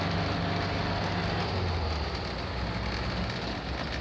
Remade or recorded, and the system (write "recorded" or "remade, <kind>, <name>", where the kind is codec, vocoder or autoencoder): recorded